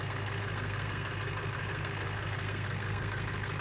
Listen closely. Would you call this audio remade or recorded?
remade